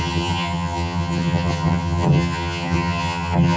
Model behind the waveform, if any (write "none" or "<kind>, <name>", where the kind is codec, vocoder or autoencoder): vocoder, HiFi-GAN